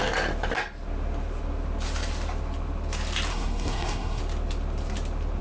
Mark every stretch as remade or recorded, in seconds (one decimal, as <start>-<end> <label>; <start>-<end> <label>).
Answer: 0.0-3.3 recorded; 3.3-4.2 remade; 4.2-5.4 recorded